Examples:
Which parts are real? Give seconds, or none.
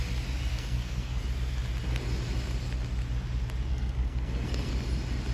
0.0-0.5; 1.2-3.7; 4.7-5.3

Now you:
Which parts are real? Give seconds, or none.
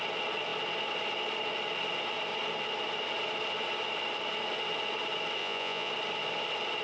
0.0-5.4; 5.9-6.8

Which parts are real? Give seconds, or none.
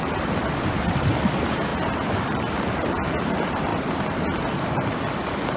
1.7-2.6; 3.7-4.6